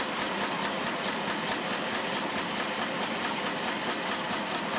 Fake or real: real